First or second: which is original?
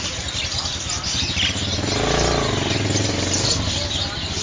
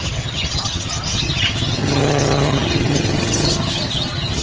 first